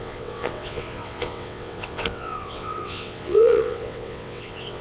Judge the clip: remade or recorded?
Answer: remade